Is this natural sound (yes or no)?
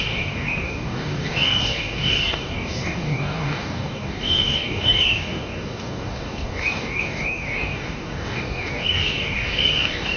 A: no